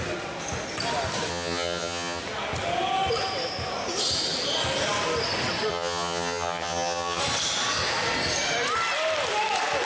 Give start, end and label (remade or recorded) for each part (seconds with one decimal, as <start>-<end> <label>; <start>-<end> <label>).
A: 0.0-1.3 recorded; 1.3-2.2 remade; 2.2-5.7 recorded; 5.7-7.2 remade; 7.2-9.8 recorded